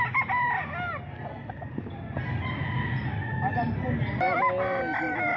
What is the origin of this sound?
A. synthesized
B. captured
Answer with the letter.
B